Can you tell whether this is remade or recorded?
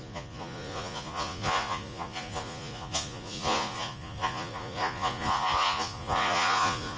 remade